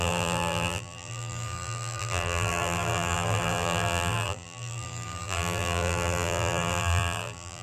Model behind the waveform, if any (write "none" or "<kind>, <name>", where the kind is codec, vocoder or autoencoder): vocoder, BigVGAN v2